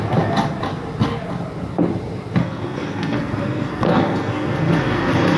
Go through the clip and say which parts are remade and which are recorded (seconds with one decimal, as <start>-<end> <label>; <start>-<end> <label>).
0.0-2.4 recorded; 2.4-5.4 remade